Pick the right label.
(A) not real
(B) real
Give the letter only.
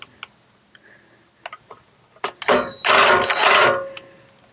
B